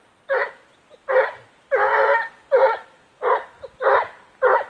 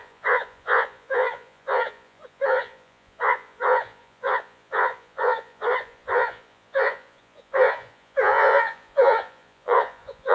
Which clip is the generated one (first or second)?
second